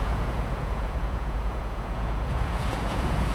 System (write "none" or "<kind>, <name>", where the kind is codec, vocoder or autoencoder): vocoder, Vocos